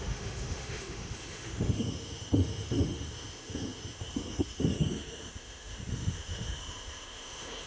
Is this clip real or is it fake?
fake